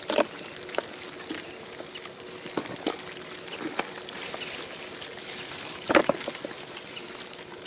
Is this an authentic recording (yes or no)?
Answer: yes